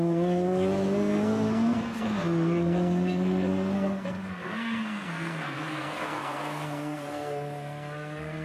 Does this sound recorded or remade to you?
remade